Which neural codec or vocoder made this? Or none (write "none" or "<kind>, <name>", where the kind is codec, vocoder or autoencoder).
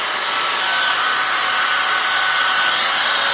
none